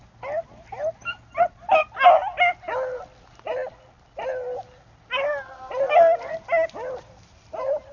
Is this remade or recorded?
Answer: recorded